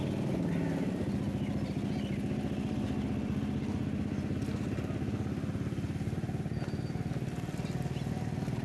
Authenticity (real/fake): real